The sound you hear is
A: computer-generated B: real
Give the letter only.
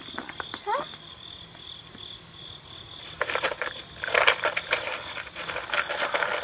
B